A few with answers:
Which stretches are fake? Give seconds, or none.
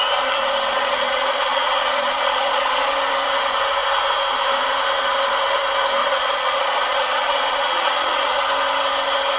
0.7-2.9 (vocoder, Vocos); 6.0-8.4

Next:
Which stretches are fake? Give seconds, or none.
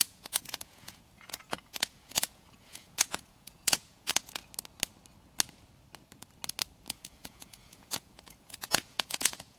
0.0-4.4 (vocoder, Vocos); 6.9-9.6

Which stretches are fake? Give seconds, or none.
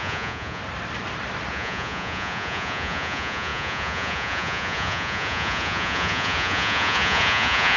0.0-0.6 (vocoder, Vocos); 1.5-7.8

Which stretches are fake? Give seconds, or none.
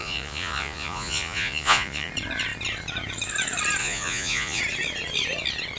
0.0-2.1 (vocoder, Vocos); 3.8-4.6